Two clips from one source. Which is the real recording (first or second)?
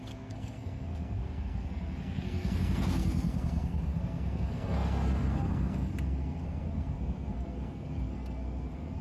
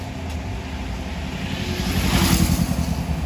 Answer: second